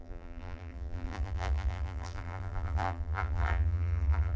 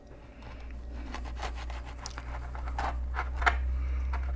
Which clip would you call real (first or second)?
second